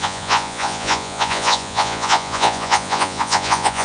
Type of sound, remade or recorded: remade